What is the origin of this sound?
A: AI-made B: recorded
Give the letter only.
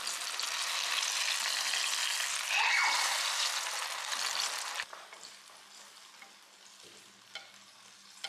B